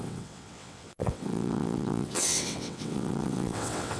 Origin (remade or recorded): remade